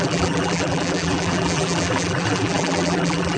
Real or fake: fake